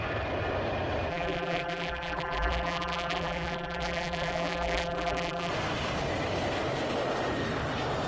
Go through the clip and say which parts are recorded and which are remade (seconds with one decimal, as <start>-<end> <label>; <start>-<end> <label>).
0.0-1.1 recorded; 1.1-5.5 remade; 5.5-8.1 recorded